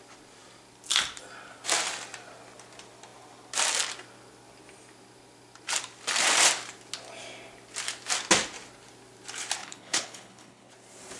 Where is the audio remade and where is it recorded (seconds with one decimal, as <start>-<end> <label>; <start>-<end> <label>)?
0.0-9.6 recorded; 9.6-10.7 remade; 10.7-11.2 recorded